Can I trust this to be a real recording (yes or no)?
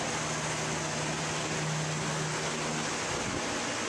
yes